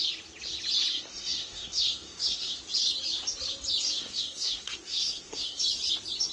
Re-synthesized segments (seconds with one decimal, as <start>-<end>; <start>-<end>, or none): 0.9-2.6; 4.0-5.6